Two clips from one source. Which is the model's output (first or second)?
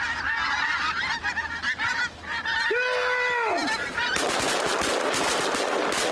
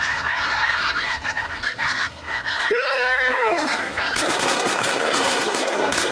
second